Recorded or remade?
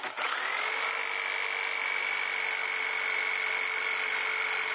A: recorded